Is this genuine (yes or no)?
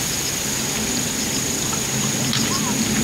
yes